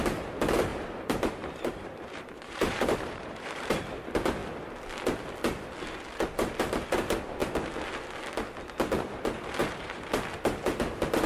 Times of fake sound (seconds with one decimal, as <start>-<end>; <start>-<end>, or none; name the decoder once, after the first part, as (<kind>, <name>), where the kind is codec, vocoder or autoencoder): 0.7-4.0 (vocoder, BigVGAN v2); 9.6-10.1